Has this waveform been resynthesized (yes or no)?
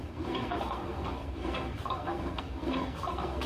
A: yes